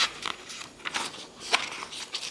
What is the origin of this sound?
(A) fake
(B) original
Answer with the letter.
B